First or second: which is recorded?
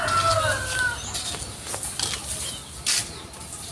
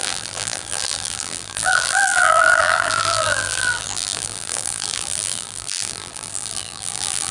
first